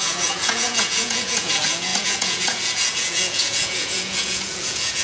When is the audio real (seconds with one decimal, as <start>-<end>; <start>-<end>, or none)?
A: none